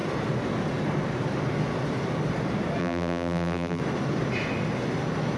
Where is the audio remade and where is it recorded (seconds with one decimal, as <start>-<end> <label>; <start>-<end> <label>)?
0.0-2.8 recorded; 2.8-3.8 remade; 3.8-5.4 recorded